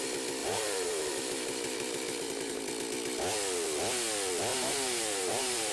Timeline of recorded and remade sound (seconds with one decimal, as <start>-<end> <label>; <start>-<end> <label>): 0.0-0.4 recorded; 0.4-2.6 remade; 2.6-4.5 recorded; 4.5-5.7 remade